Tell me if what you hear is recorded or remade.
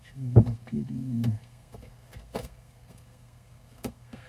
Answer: remade